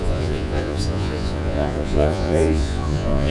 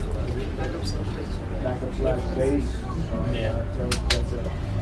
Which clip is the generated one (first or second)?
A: first